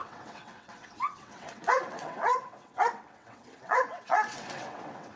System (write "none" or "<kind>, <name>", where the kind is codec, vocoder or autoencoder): vocoder, WaveNeXt